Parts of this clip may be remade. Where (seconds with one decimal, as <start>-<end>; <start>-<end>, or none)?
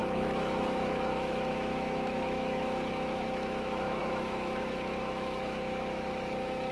0.0-6.7